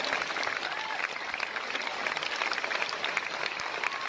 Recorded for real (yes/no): yes